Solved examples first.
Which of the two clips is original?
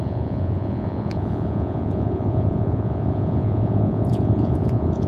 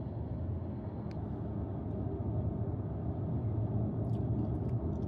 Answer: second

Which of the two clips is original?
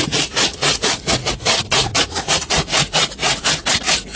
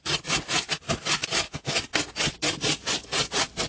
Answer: second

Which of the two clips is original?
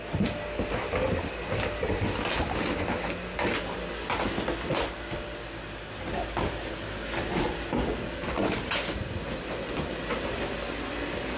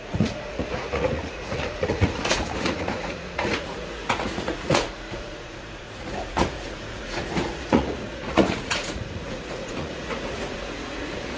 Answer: first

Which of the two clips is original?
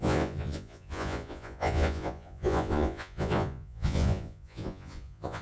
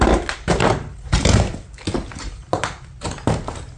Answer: second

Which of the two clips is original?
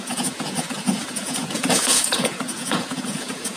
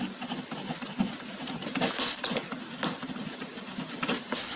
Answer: second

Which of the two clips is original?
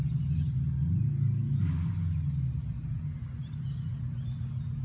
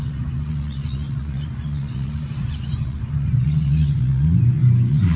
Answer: first